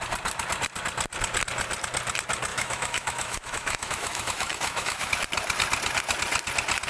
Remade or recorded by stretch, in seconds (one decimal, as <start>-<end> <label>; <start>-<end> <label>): 0.0-2.5 recorded; 2.5-5.1 remade; 5.1-6.9 recorded